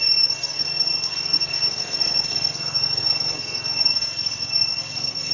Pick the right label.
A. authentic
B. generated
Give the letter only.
B